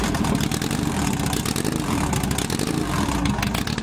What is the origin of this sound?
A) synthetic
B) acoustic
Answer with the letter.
B